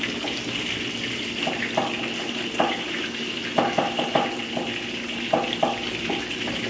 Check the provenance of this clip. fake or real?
real